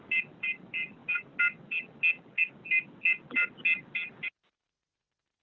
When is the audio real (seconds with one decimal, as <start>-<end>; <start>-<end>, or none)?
0.0-5.4